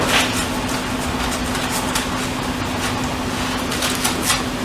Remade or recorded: recorded